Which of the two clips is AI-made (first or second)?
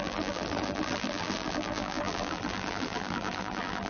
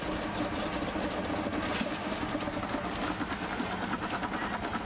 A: first